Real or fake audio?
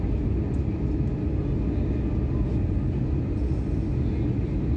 real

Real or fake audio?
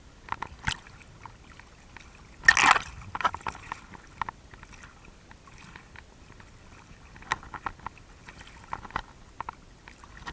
real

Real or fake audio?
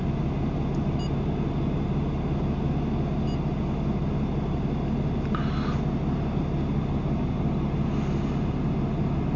real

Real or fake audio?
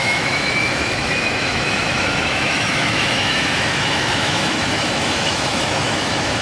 fake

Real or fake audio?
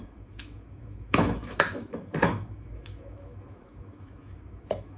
fake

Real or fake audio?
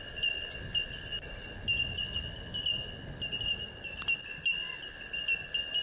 real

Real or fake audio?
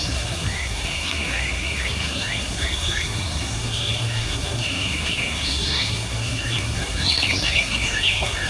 fake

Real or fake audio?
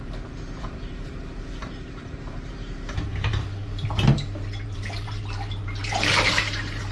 fake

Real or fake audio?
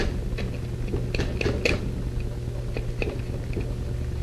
real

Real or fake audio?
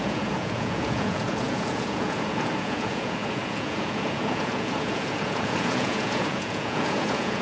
fake